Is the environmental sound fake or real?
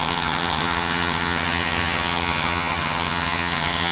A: fake